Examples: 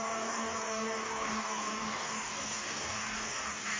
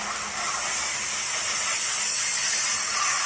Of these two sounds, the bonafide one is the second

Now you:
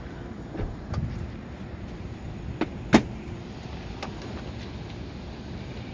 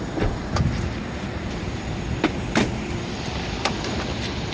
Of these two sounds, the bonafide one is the first